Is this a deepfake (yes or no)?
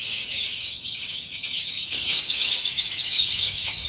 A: yes